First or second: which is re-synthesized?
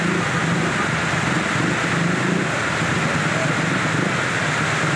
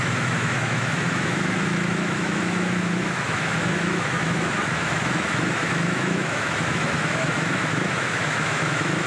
second